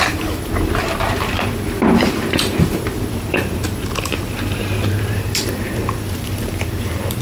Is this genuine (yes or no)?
no